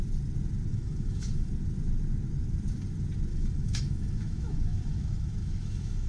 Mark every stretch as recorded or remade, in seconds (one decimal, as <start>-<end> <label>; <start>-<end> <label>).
0.0-0.7 recorded; 0.7-1.5 remade; 1.5-3.3 recorded; 3.3-6.1 remade